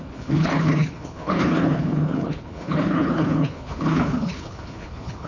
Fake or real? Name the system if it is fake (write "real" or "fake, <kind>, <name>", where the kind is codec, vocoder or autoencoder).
fake, codec, HILCodec